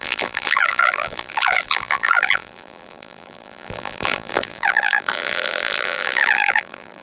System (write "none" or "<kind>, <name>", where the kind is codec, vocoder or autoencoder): vocoder, BigVGAN v2